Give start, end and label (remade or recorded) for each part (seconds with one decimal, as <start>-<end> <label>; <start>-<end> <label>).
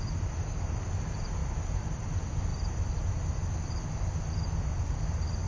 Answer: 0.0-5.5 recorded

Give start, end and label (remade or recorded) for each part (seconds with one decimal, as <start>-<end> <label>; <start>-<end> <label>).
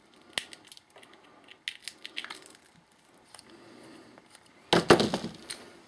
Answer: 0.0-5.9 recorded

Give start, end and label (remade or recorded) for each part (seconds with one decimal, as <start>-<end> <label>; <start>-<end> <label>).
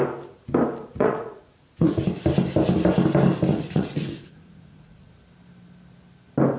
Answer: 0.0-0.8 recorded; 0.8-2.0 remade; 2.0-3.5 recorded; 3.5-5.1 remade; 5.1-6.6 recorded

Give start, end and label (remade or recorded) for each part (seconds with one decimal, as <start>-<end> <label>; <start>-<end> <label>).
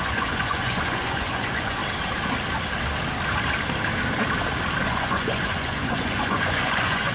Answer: 0.0-1.8 remade; 1.8-4.9 recorded; 4.9-7.1 remade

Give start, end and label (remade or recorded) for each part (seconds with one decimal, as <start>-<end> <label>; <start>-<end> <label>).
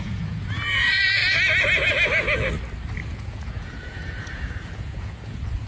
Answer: 0.0-1.2 remade; 1.2-3.0 recorded; 3.0-5.7 remade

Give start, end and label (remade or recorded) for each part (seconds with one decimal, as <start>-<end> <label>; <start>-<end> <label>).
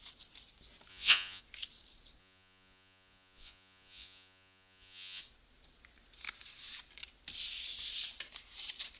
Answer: 0.0-0.9 recorded; 0.9-1.4 remade; 1.4-2.2 recorded; 2.2-5.2 remade; 5.2-9.0 recorded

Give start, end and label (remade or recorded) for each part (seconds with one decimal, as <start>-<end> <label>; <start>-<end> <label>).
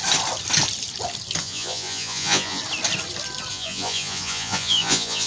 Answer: 0.0-1.4 recorded; 1.4-2.6 remade; 2.6-3.5 recorded; 3.5-5.3 remade